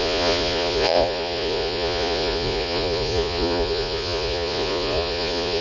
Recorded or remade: remade